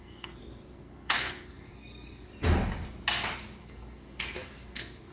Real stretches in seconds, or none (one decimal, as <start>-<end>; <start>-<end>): 2.3-3.6

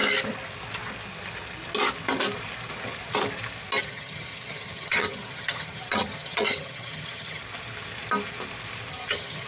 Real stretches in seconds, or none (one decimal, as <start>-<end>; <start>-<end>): 0.0-3.8; 7.4-8.9